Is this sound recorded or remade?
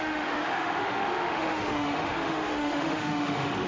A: remade